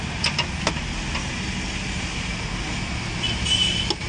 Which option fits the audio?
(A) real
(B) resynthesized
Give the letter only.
A